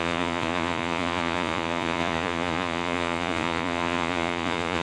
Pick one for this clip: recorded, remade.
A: remade